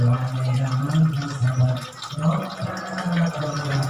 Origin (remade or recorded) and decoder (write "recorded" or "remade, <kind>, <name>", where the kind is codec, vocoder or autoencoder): recorded